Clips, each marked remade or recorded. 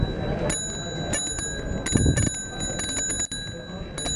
recorded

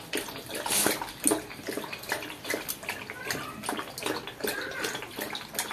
recorded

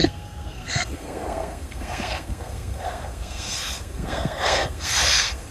remade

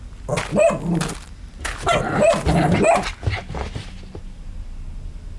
recorded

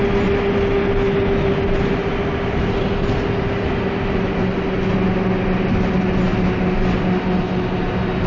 recorded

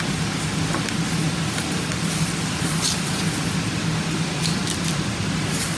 recorded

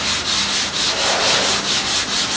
recorded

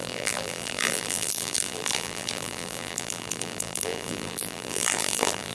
remade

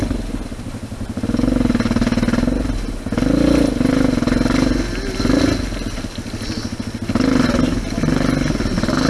recorded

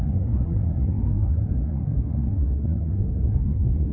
remade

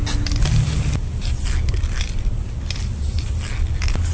recorded